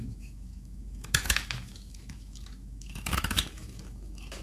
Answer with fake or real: fake